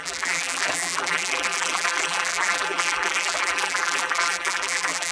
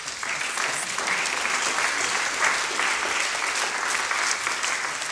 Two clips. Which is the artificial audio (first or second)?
first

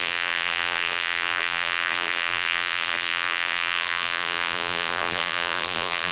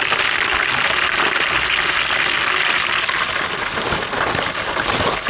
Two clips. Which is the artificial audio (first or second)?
first